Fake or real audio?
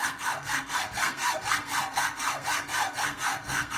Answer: fake